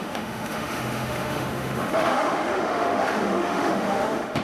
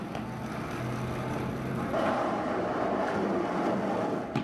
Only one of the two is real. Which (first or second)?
second